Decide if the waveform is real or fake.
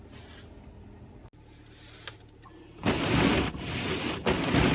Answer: real